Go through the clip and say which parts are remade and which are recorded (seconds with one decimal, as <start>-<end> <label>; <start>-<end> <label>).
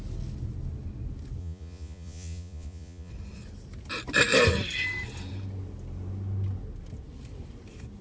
0.0-1.4 recorded; 1.4-3.1 remade; 3.1-8.0 recorded